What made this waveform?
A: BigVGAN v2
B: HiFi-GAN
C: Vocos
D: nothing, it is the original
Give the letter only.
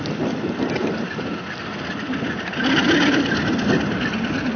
D